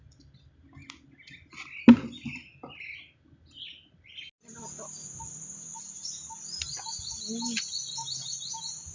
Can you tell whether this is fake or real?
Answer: real